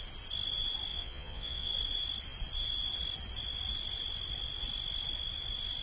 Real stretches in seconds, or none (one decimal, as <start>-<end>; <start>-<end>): 0.0-0.9; 1.7-5.8